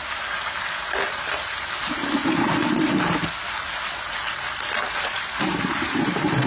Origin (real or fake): real